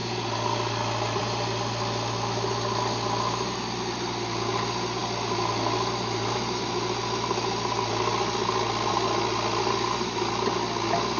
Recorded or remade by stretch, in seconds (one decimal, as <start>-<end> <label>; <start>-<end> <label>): 0.0-11.2 recorded